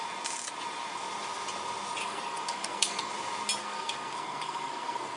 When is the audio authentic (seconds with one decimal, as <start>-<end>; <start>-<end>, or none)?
0.0-2.0; 3.1-3.6